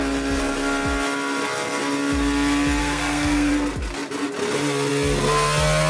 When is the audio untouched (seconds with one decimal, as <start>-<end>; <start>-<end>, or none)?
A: 0.0-2.8; 3.5-5.9